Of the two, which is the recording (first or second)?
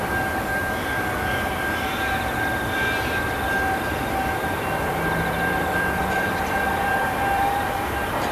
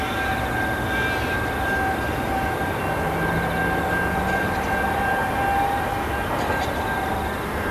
second